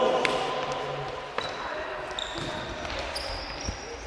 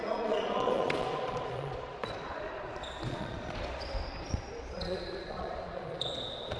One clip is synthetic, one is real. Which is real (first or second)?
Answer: first